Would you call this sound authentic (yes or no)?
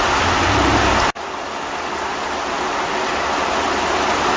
yes